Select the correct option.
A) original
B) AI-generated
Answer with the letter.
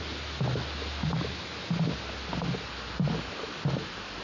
A